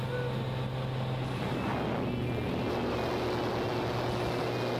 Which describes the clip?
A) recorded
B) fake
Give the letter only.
A